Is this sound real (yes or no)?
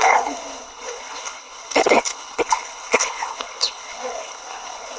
no